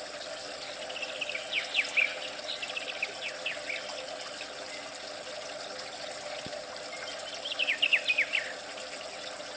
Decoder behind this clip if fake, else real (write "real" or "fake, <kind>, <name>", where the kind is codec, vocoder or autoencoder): real